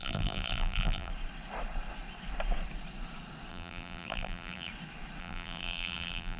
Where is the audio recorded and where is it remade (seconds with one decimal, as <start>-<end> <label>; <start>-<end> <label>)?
0.0-1.1 remade; 1.1-3.5 recorded; 3.5-4.7 remade; 4.7-5.2 recorded; 5.2-6.4 remade